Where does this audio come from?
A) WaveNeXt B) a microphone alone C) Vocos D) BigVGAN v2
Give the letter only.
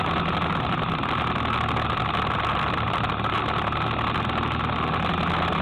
B